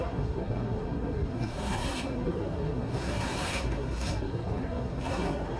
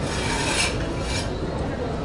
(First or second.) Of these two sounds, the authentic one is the second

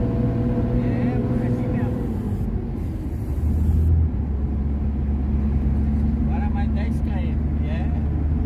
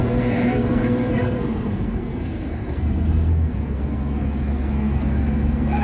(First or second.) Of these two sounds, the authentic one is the first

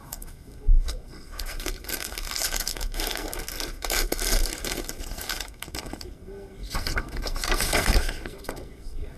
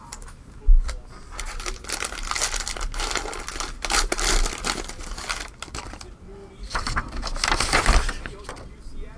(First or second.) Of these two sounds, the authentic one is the second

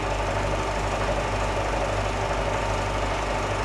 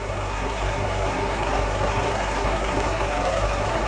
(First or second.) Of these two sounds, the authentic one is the first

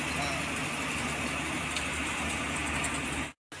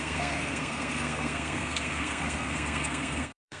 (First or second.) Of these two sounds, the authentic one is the first